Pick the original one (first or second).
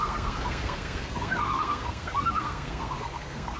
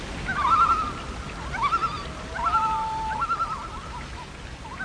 second